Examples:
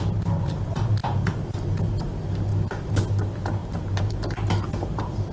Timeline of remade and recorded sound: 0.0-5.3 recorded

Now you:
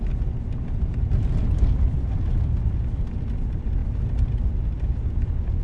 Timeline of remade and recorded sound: 0.0-5.6 recorded

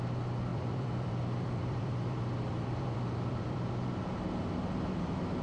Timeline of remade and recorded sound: 0.0-0.5 recorded; 0.5-3.7 remade; 3.7-5.4 recorded

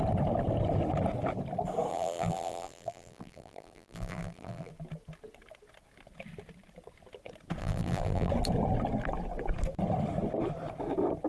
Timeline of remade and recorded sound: 0.0-1.9 recorded; 1.9-4.7 remade; 4.7-7.6 recorded; 7.6-8.3 remade; 8.3-11.3 recorded

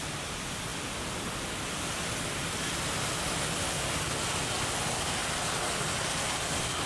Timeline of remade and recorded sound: 0.0-6.9 recorded

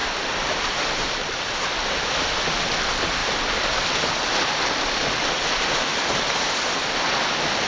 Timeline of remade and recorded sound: 0.0-1.4 remade; 1.4-3.2 recorded; 3.2-3.8 remade; 3.8-7.7 recorded